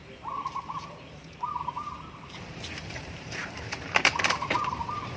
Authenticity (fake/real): fake